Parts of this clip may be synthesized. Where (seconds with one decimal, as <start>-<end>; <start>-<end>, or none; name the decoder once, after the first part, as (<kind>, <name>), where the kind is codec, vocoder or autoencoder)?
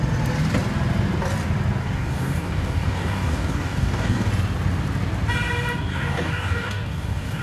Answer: 1.8-4.3 (codec, DAC); 5.9-7.4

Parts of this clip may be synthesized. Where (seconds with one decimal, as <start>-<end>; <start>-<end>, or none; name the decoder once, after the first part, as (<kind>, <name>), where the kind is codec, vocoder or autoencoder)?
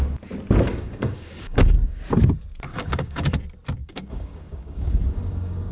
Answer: 0.7-2.0 (codec, DAC); 2.7-3.3; 3.8-5.7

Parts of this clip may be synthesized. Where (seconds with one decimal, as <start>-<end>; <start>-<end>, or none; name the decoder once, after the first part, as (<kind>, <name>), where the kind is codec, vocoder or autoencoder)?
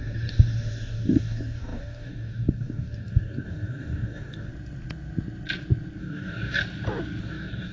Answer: 0.0-4.5 (codec, DAC); 6.0-6.6; 7.2-7.7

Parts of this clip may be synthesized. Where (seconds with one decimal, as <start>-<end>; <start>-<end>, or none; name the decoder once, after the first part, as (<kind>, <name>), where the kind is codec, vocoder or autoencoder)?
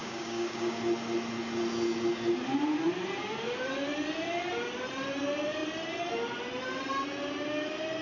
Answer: 0.0-0.8 (codec, DAC)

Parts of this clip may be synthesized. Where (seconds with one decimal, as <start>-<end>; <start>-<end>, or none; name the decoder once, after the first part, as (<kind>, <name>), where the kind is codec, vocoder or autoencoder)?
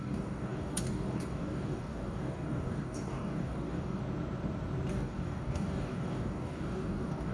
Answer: 0.0-4.0 (codec, DAC); 4.9-7.3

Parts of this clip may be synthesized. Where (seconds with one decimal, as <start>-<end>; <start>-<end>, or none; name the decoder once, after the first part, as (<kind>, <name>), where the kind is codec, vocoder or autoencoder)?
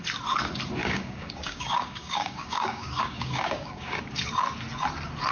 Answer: 0.8-4.0 (codec, DAC)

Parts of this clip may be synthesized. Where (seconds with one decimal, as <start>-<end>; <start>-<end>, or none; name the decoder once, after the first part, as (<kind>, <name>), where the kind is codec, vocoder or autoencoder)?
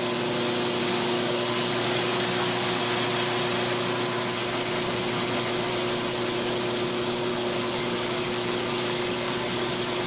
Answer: 0.8-2.8 (codec, DAC); 7.3-10.1